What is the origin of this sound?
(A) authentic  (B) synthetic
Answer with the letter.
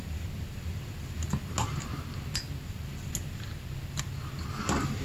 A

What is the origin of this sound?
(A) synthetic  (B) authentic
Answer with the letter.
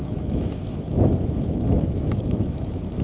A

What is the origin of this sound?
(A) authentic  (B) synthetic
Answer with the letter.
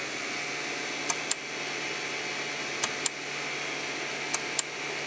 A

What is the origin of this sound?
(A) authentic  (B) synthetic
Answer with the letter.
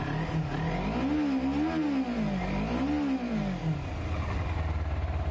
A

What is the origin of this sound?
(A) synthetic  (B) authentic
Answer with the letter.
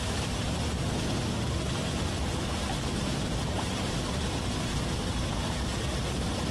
A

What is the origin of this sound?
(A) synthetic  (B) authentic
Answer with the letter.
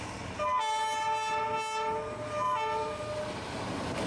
B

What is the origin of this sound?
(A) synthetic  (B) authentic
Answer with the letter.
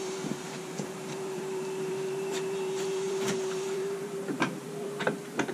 A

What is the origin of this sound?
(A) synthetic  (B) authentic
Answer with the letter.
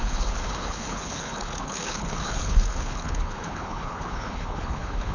A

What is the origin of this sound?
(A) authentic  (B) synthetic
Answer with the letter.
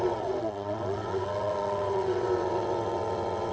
B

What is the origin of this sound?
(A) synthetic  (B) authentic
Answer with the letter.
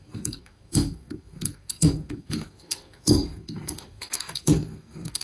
A